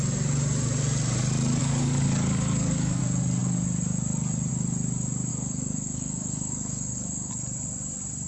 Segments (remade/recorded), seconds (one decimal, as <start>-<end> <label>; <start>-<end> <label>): 0.0-1.6 recorded; 1.6-3.0 remade; 3.0-5.3 recorded; 5.3-7.3 remade; 7.3-8.3 recorded